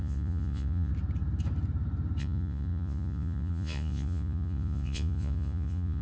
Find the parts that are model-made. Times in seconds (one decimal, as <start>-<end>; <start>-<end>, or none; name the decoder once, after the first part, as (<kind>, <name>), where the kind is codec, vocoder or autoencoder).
0.0-0.9 (vocoder, Vocos); 2.2-6.0